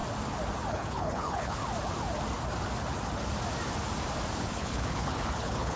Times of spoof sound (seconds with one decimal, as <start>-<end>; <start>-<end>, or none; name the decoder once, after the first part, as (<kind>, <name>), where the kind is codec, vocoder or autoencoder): 0.7-1.6 (codec, HILCodec); 4.4-5.8